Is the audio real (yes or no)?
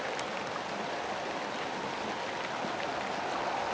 yes